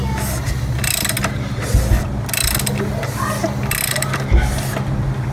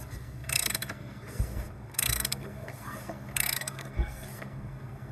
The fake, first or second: second